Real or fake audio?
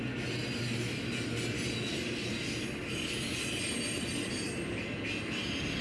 real